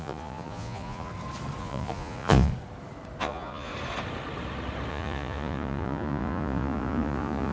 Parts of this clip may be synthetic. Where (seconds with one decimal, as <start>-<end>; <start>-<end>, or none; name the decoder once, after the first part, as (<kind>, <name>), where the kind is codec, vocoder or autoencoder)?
0.0-1.1 (vocoder, Vocos); 1.6-2.5; 3.2-3.7; 4.9-7.5